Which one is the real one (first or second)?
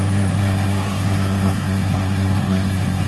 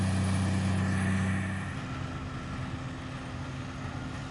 second